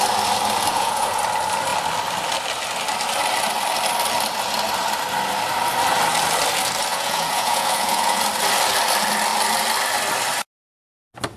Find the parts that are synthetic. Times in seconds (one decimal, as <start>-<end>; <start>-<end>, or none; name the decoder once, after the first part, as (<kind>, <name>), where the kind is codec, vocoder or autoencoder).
0.7-1.2 (vocoder, Vocos); 6.9-8.2